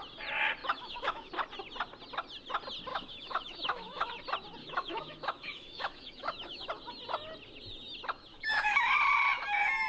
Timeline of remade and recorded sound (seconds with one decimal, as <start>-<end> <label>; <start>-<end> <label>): 0.0-0.6 recorded; 0.6-1.3 remade; 1.3-2.9 recorded; 2.9-4.1 remade; 4.1-4.6 recorded; 4.6-6.7 remade; 6.7-8.3 recorded; 8.3-8.9 remade; 8.9-9.9 recorded